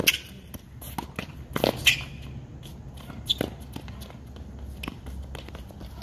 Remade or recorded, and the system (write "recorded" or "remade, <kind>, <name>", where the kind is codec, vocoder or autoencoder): recorded